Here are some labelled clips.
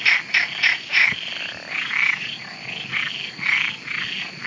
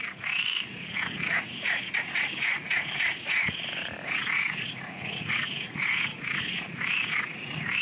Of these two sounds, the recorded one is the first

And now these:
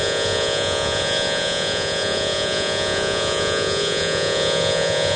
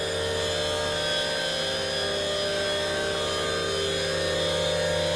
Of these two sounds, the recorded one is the second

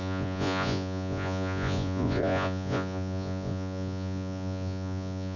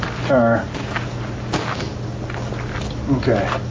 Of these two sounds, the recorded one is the second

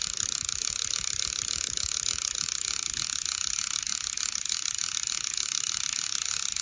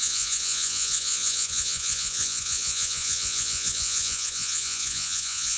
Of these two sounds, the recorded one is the first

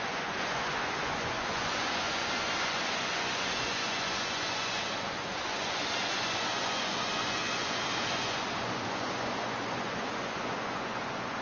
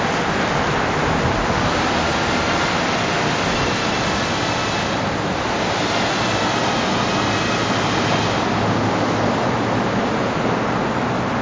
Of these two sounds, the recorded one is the second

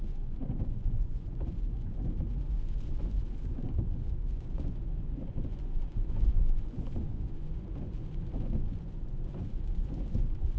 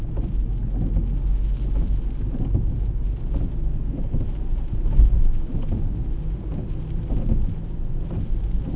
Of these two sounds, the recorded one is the second